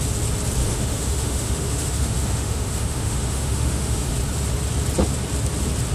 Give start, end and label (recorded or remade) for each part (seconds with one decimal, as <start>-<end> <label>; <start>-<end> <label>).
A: 0.0-0.6 recorded; 0.6-4.1 remade; 4.1-5.9 recorded